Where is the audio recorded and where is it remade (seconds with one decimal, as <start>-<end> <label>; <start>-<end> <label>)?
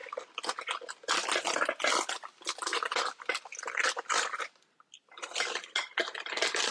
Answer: 0.0-2.7 recorded; 2.7-4.5 remade; 4.5-6.7 recorded